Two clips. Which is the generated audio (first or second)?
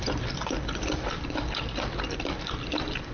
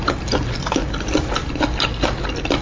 first